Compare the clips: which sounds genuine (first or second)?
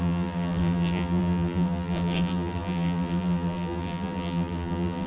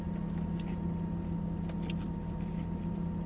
second